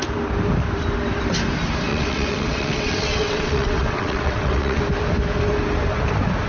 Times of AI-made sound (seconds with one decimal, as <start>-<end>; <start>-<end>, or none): 1.9-4.8